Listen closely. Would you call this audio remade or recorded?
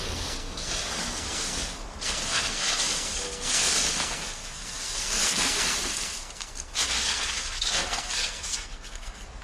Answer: remade